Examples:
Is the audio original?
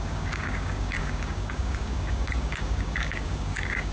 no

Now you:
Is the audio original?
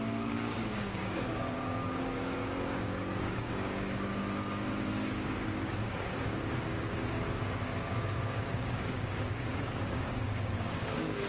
no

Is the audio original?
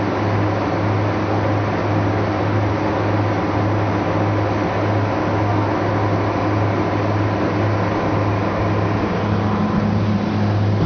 yes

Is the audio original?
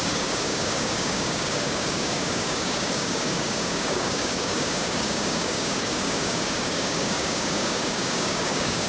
no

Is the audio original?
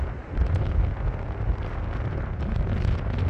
yes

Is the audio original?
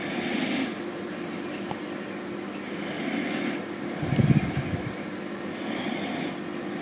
yes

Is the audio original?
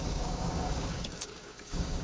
no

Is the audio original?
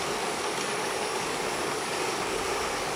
no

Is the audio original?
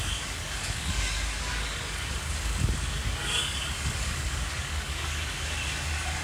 no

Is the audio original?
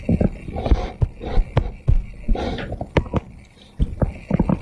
yes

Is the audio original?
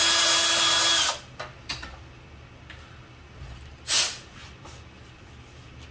yes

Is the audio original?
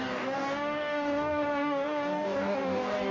no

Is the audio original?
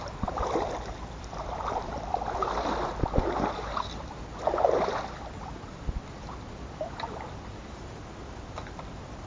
yes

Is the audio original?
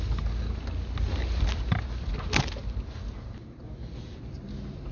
yes